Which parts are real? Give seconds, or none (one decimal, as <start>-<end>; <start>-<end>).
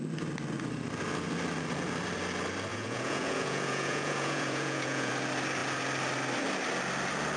0.0-2.7; 5.1-7.4